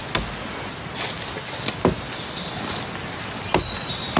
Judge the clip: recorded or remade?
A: recorded